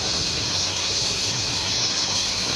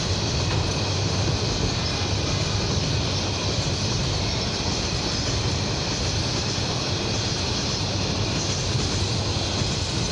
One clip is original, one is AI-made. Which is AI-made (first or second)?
first